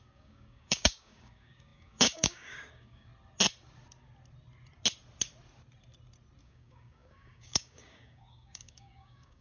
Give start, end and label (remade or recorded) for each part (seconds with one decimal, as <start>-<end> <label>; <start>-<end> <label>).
0.0-3.1 remade; 3.1-6.4 recorded; 6.4-9.4 remade